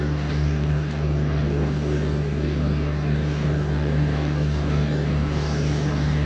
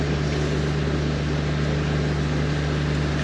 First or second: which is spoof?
first